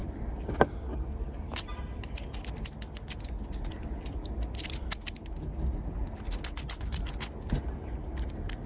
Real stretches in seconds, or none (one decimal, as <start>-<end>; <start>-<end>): 0.9-8.7